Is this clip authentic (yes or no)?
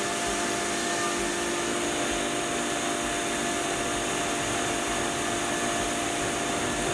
yes